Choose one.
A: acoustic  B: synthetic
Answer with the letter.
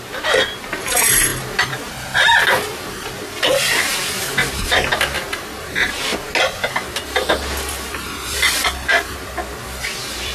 A